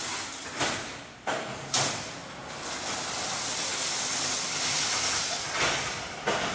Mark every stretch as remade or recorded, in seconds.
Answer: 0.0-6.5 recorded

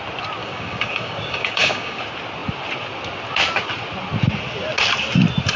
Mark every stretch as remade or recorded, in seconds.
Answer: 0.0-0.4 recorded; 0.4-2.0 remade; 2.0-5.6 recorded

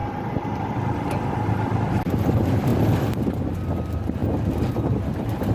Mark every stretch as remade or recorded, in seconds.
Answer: 0.0-1.3 recorded; 1.3-4.2 remade; 4.2-4.7 recorded; 4.7-5.5 remade

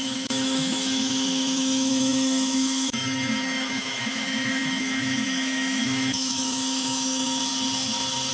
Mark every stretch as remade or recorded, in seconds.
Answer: 0.0-7.5 remade; 7.5-8.3 recorded

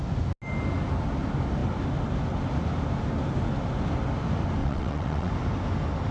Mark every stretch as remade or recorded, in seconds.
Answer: 0.0-4.6 recorded; 4.6-5.3 remade; 5.3-6.1 recorded

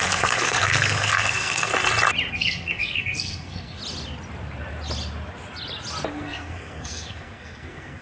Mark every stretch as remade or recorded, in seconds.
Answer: 0.0-1.7 remade; 1.7-2.3 recorded; 2.3-3.8 remade; 3.8-6.1 recorded; 6.1-8.0 remade